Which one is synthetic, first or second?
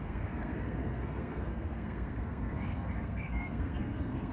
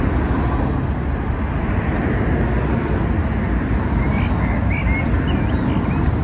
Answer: first